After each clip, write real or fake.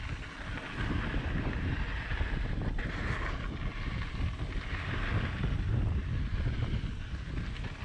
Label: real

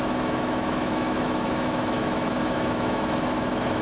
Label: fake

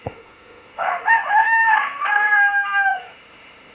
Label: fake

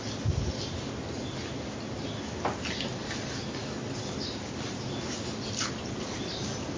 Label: real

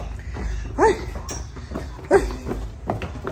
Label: real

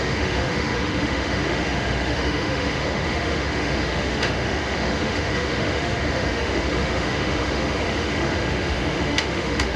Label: fake